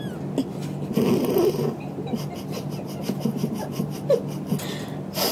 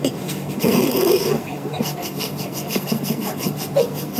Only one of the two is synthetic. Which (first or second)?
second